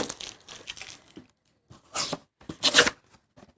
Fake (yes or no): no